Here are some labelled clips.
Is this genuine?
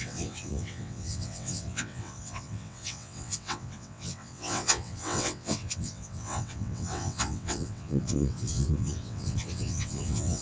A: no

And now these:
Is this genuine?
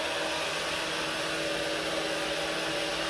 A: yes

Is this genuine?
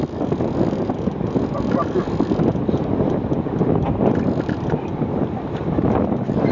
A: yes